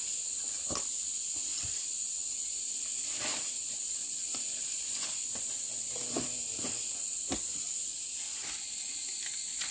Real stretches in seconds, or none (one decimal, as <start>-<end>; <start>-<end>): 0.0-3.3; 3.9-9.7